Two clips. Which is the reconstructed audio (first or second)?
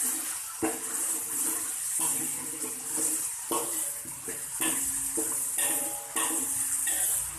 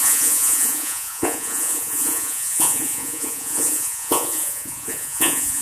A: second